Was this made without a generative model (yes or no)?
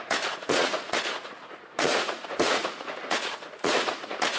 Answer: no